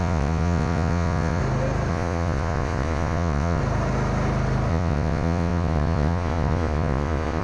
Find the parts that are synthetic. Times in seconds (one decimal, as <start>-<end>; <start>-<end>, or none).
0.0-1.4; 1.9-3.6; 4.7-7.4